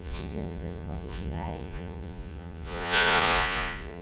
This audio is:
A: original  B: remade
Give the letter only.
B